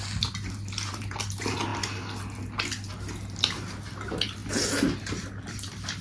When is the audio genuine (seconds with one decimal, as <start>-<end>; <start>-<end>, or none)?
0.0-6.0